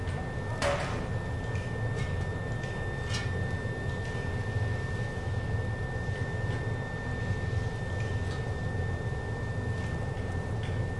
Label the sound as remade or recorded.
recorded